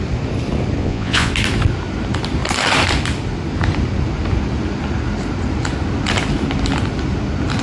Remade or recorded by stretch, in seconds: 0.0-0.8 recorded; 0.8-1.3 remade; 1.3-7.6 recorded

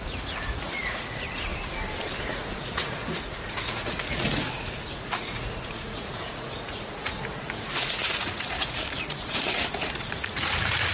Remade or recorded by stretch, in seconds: 0.0-1.5 remade; 1.5-2.3 recorded; 2.3-10.9 remade

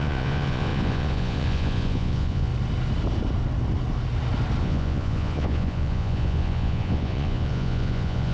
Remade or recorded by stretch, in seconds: 0.0-2.5 remade; 2.5-4.6 recorded; 4.6-8.3 remade

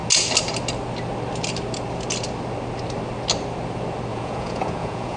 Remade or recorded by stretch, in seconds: 0.0-4.1 recorded; 4.1-5.2 remade